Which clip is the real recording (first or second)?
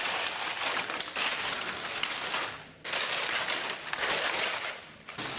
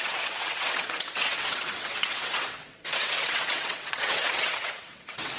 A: first